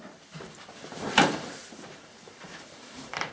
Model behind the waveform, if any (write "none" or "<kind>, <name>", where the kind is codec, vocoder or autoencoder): vocoder, BigVGAN v2